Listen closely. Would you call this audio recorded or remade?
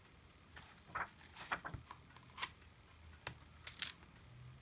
recorded